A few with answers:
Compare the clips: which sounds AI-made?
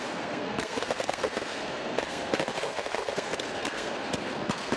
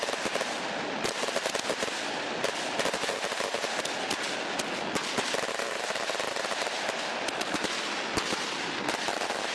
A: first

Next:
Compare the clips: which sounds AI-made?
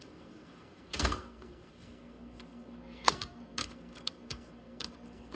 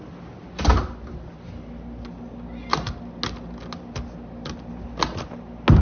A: first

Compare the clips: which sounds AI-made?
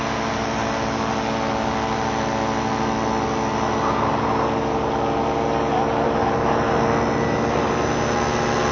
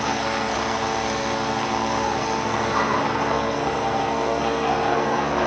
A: second